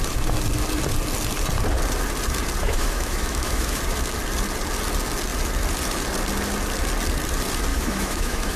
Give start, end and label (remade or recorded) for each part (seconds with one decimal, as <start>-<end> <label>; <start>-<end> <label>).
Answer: 0.0-2.6 recorded; 2.6-3.8 remade; 3.8-7.7 recorded; 7.7-8.6 remade